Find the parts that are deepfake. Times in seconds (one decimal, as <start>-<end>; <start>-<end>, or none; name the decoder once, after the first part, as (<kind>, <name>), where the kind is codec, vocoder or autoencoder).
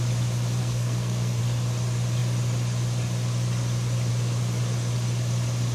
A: 0.6-1.4 (codec, SNAC)